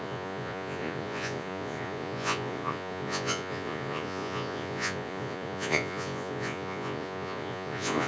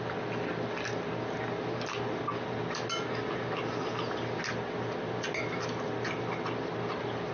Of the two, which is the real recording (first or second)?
second